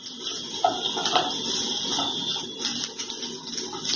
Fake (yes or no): no